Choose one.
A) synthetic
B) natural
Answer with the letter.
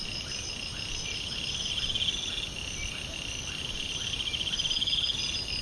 B